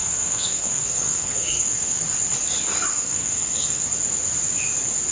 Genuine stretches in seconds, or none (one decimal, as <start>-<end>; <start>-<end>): 2.0-2.9; 3.8-5.1